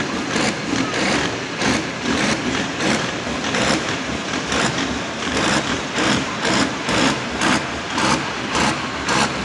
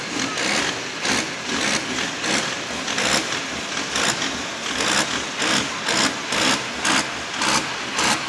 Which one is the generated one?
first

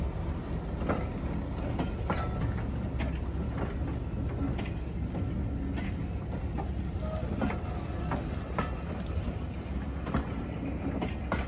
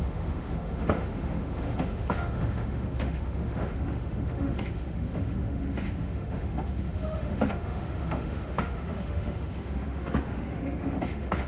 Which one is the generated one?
second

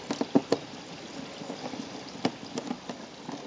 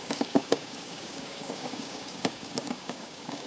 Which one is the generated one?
second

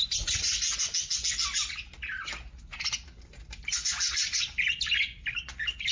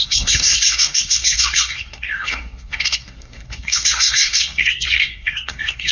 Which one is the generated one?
second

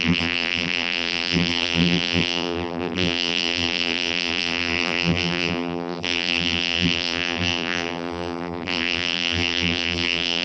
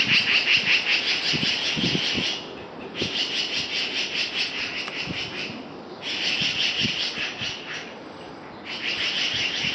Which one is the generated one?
first